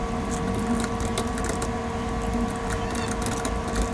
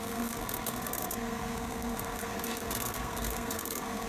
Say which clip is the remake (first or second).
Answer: second